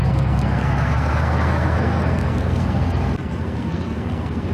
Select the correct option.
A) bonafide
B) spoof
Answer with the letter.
B